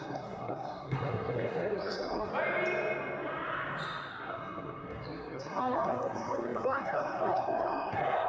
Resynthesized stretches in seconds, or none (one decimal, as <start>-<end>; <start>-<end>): 0.0-2.3; 4.1-8.3